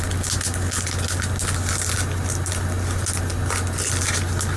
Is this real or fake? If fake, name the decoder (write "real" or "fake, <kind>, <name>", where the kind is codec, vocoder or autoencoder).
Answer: real